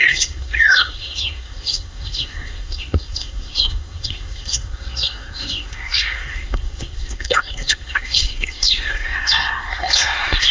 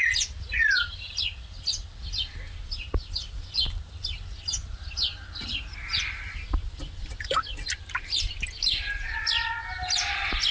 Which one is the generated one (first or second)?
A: first